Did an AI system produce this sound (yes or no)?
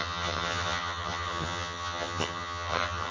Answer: yes